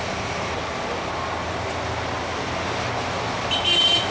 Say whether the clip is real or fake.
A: real